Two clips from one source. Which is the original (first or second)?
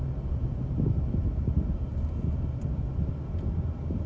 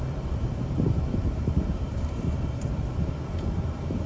first